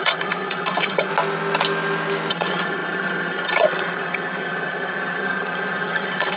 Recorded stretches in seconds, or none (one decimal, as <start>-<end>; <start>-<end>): 1.1-2.3